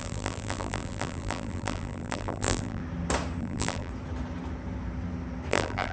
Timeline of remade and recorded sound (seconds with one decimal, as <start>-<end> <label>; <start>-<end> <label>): 0.0-2.8 remade; 2.8-3.4 recorded; 3.4-3.9 remade; 3.9-5.5 recorded; 5.5-5.9 remade

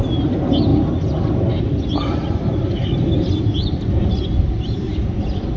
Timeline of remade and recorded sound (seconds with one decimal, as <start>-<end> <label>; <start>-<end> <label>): 0.0-5.6 recorded

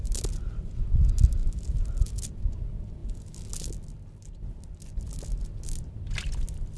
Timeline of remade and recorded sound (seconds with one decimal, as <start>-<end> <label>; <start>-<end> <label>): 0.0-6.8 recorded

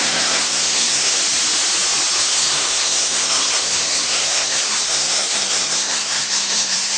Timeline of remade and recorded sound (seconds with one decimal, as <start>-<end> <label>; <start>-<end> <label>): 0.0-1.2 remade; 1.2-2.2 recorded; 2.2-7.0 remade

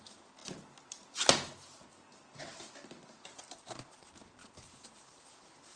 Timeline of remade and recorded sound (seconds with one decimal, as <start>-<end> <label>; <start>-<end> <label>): 0.0-4.4 recorded; 4.4-5.2 remade; 5.2-5.8 recorded

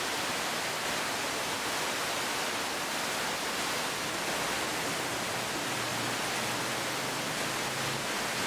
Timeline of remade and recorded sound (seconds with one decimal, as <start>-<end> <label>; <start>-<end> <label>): 0.0-8.5 recorded

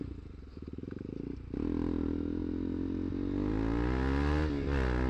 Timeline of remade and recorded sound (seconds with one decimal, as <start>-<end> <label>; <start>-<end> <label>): 0.0-5.1 recorded

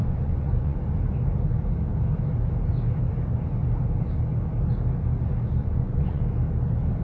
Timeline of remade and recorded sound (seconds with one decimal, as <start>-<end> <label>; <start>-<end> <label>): 0.0-0.8 remade; 0.8-5.6 recorded; 5.6-6.2 remade; 6.2-7.0 recorded